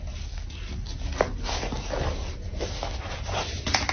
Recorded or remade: recorded